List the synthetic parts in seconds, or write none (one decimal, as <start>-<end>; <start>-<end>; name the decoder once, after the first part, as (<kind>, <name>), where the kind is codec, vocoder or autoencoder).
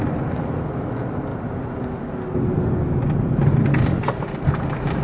none